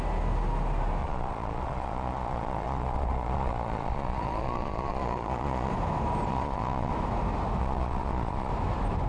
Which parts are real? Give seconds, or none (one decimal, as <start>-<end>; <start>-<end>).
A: 0.0-1.0; 5.7-6.3; 6.9-7.6; 8.5-9.1

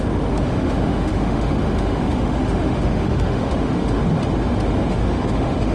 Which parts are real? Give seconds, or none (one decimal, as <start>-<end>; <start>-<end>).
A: 4.0-4.8

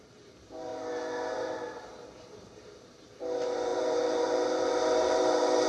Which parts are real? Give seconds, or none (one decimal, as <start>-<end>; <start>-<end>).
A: 0.7-2.2

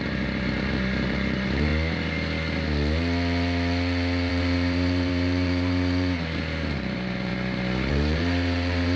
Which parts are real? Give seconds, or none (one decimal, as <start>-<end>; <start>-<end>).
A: 1.7-4.3; 7.3-7.9

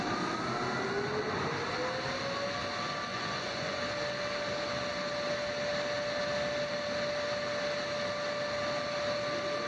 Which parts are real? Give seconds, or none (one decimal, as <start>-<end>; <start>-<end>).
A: 0.0-3.1; 3.8-9.7

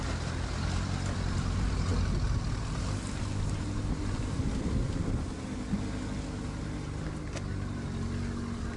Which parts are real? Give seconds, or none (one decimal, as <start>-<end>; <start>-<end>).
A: 0.0-8.8